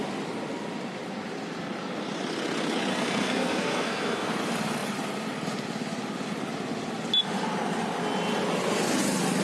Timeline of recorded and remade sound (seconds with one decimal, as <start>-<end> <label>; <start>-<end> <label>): 0.0-2.9 recorded; 2.9-4.3 remade; 4.3-9.4 recorded